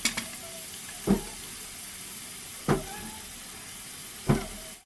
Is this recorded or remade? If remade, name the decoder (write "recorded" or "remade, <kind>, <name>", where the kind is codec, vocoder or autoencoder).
recorded